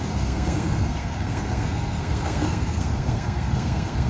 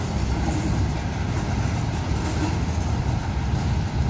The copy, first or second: first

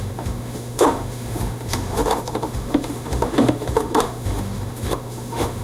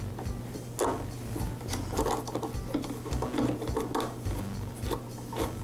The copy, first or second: first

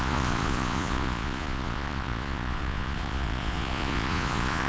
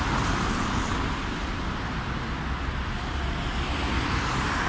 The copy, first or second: first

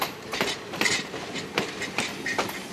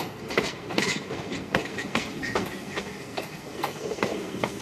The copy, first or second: second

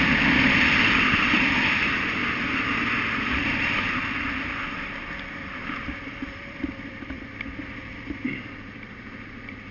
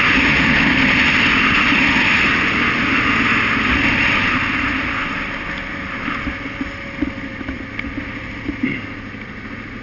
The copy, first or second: first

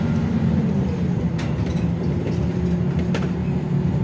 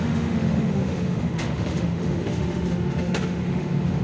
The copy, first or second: second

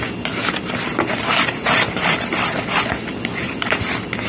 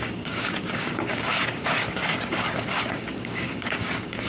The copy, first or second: second